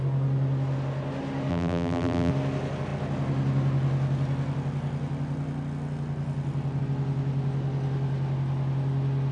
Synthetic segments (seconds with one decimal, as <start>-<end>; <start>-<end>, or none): 1.5-2.3